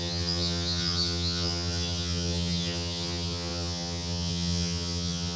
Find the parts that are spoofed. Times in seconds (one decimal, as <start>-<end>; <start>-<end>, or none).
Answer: 0.0-5.4